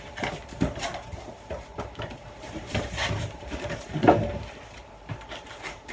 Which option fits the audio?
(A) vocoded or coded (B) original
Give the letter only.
A